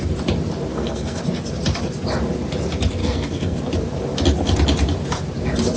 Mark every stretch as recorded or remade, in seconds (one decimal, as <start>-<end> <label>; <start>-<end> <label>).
0.0-0.7 recorded; 0.7-1.2 remade; 1.2-3.0 recorded; 3.0-3.6 remade; 3.6-5.8 recorded

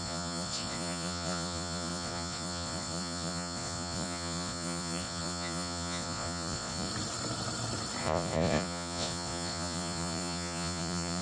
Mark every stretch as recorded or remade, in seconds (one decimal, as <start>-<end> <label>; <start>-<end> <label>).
0.0-6.9 remade; 6.9-8.0 recorded; 8.0-11.2 remade

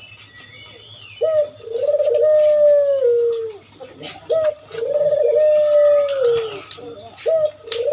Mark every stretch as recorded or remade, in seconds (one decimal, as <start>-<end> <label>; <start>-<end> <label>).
0.0-7.9 recorded

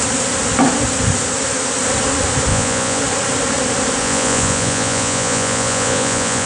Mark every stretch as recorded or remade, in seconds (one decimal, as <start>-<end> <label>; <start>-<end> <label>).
0.0-2.5 recorded; 2.5-3.0 remade; 3.0-4.0 recorded; 4.0-6.5 remade

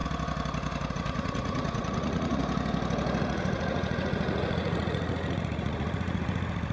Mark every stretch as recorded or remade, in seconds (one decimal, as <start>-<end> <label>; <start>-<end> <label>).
0.0-0.9 recorded; 0.9-2.4 remade; 2.4-3.2 recorded; 3.2-6.7 remade

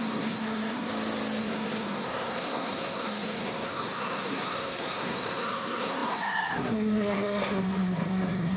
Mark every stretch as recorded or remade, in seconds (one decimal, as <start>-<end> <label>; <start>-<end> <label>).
0.0-0.9 remade; 0.9-1.4 recorded; 1.4-8.6 remade